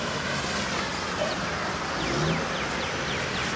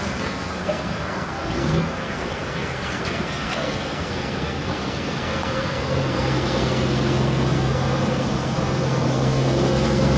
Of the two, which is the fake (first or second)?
second